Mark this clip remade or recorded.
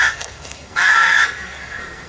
remade